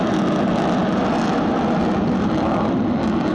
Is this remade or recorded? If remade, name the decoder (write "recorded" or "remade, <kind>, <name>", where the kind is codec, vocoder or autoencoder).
recorded